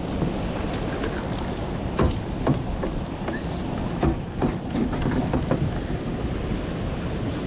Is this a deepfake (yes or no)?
no